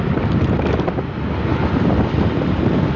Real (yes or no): yes